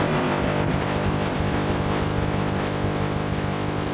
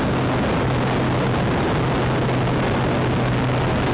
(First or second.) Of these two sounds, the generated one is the first